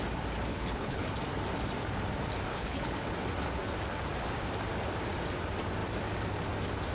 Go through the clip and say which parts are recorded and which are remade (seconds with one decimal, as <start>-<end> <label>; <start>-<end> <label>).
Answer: 0.0-0.5 recorded; 0.5-1.1 remade; 1.1-2.5 recorded; 2.5-3.1 remade; 3.1-6.9 recorded